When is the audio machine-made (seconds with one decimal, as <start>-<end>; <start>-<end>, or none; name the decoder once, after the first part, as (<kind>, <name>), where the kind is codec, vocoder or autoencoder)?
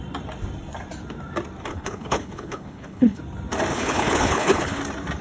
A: 1.7-3.2 (codec, HILCodec); 3.7-4.8